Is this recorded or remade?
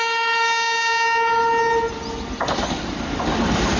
recorded